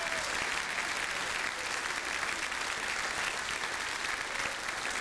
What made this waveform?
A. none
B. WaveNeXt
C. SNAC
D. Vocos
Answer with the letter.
A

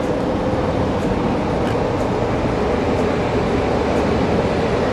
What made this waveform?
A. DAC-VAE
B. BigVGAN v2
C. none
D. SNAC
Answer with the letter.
C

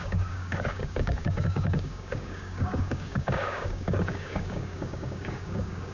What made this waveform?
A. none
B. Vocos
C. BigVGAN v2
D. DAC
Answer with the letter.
D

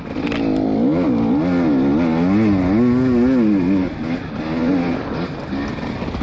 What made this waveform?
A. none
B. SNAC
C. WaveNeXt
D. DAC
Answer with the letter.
A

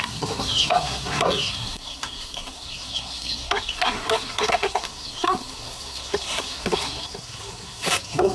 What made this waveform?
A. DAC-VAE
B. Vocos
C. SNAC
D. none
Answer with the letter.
C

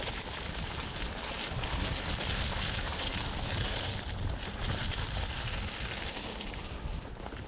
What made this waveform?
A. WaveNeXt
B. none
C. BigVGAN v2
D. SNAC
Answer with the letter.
B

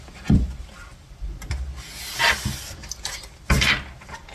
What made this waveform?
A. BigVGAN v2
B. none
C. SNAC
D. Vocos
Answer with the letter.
B